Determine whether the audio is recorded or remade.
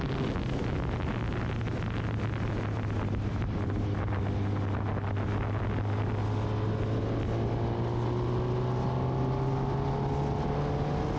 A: recorded